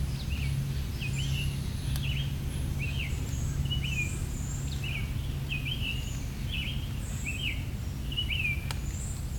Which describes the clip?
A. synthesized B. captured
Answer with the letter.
B